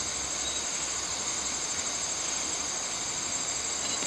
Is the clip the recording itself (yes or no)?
yes